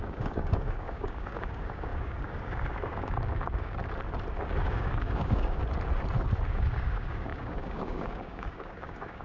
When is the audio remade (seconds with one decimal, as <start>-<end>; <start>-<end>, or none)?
0.0-3.8; 4.6-5.6; 6.5-9.2

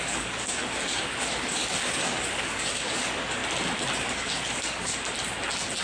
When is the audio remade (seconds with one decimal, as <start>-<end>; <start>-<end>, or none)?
0.0-3.4; 4.0-4.9